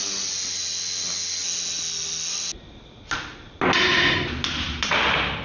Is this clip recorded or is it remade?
recorded